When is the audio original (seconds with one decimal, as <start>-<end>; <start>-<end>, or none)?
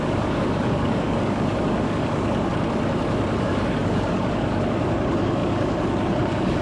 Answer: 2.5-3.4